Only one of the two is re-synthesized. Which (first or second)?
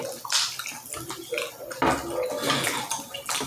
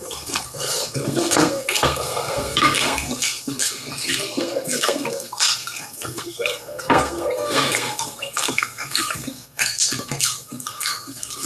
second